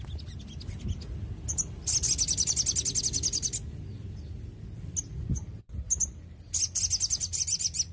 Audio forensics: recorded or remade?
recorded